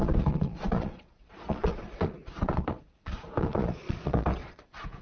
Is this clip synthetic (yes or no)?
yes